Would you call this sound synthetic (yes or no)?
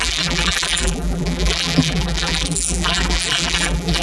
yes